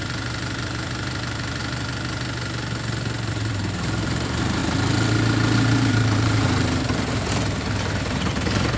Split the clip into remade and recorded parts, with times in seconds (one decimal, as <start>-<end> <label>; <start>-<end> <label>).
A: 0.0-1.6 remade; 1.6-3.3 recorded; 3.3-4.6 remade; 4.6-5.9 recorded; 5.9-8.8 remade